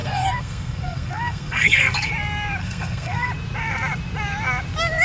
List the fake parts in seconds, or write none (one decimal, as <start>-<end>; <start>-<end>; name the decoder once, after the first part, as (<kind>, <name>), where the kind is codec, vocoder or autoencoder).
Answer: 0.0-2.1 (codec, SNAC); 2.6-3.3